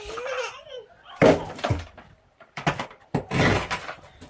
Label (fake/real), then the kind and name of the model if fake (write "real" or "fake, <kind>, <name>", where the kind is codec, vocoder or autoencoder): real